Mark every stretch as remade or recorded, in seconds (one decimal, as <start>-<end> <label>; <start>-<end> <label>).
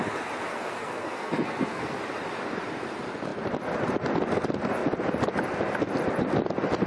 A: 0.0-0.5 recorded; 0.5-2.0 remade; 2.0-6.9 recorded